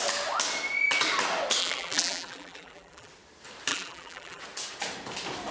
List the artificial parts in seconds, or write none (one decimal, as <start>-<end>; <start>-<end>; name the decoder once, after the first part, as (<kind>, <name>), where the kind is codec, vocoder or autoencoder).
1.6-3.1 (vocoder, BigVGAN v2); 3.7-4.4